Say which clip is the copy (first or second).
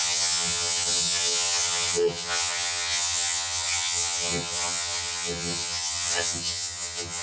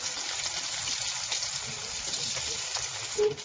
first